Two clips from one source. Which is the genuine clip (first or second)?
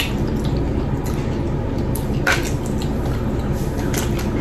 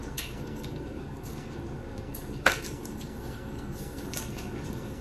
first